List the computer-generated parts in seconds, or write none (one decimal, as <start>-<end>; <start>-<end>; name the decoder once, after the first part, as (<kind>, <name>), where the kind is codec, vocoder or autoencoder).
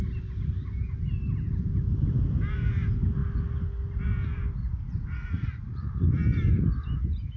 4.6-6.1 (vocoder, Vocos)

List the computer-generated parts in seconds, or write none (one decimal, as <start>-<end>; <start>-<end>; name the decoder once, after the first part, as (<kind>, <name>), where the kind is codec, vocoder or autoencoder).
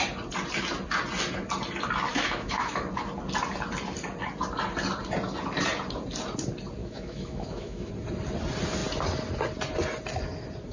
2.1-2.8 (autoencoder, DAC-VAE); 6.8-7.9